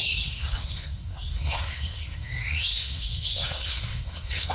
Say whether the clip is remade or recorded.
remade